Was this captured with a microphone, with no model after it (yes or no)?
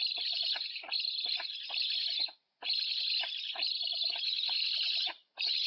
yes